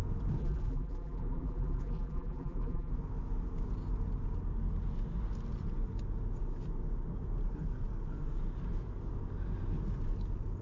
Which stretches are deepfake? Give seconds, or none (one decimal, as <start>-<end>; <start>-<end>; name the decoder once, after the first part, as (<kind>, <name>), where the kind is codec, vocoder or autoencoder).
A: 0.4-2.9 (vocoder, BigVGAN v2)